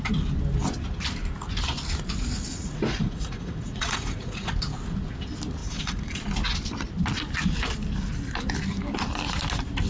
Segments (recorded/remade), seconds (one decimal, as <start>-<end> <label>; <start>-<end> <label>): 0.0-2.5 recorded; 2.5-4.5 remade; 4.5-5.6 recorded; 5.6-6.2 remade; 6.2-9.9 recorded